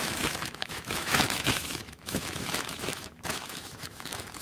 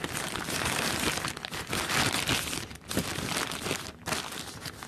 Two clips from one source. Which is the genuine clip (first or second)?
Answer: second